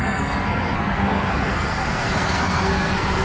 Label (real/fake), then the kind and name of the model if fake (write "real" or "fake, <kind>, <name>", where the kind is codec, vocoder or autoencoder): fake, codec, SNAC